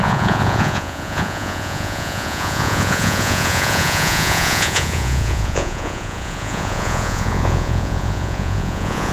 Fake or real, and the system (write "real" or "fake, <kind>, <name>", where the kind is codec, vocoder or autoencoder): fake, vocoder, Vocos